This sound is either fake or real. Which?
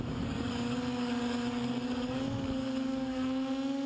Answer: fake